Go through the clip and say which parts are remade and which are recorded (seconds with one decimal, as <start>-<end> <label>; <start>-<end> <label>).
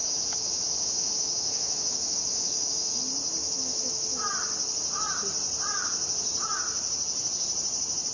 0.0-3.0 remade; 3.0-3.4 recorded; 3.4-4.2 remade; 4.2-8.1 recorded